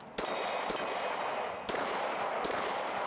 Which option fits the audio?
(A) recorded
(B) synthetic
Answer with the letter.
A